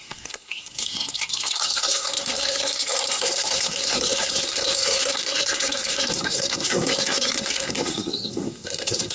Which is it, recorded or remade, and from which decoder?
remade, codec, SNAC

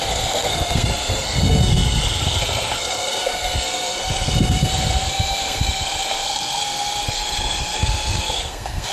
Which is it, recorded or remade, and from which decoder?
remade, codec, SNAC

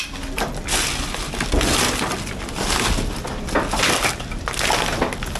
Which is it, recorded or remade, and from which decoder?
recorded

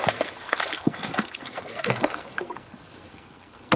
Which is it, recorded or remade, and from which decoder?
remade, codec, SNAC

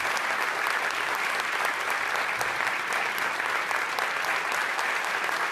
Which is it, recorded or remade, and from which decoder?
recorded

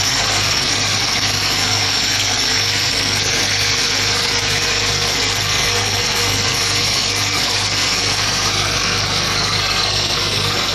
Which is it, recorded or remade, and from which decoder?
remade, codec, SNAC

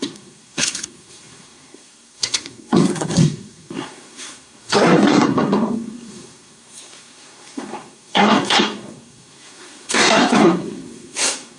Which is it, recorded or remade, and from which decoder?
remade, codec, SNAC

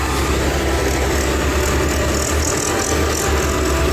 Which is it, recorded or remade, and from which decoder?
recorded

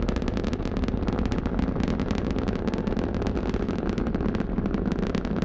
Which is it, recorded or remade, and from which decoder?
recorded